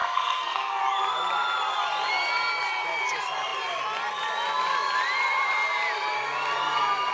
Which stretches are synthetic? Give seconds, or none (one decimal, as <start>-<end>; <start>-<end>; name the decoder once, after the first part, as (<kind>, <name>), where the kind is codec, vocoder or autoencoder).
0.0-0.8 (codec, SNAC)